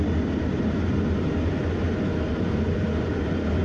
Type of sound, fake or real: real